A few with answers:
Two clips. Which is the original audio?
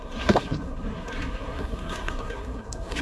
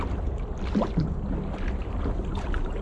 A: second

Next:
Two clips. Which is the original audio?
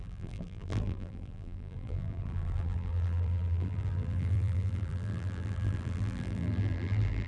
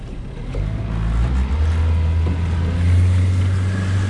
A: second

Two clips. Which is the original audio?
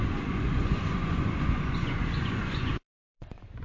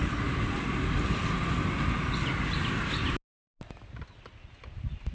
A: second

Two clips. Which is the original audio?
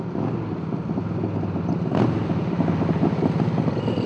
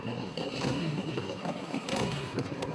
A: first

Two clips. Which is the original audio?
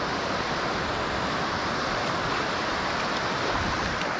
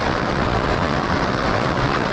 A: first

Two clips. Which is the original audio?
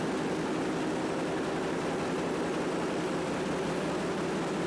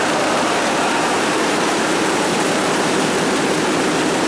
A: first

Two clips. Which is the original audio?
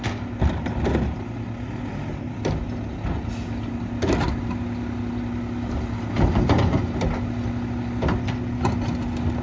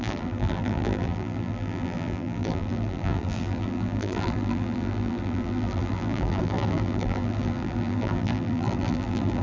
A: first